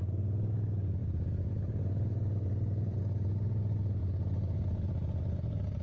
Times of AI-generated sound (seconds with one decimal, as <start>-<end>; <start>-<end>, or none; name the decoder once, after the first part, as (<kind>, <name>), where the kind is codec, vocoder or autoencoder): 1.0-3.0 (vocoder, BigVGAN v2)